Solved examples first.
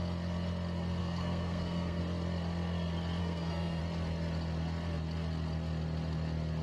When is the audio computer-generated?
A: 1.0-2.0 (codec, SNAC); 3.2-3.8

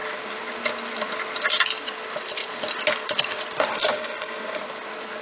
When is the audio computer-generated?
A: 3.7-4.6 (codec, SNAC)

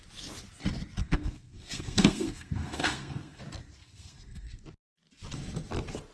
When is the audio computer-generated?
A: 1.0-3.4 (codec, SNAC); 3.8-4.6